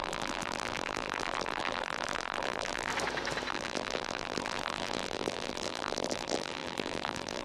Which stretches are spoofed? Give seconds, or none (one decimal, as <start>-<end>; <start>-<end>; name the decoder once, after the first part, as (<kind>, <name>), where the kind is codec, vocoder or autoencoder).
0.0-2.9 (vocoder, BigVGAN v2); 3.5-7.4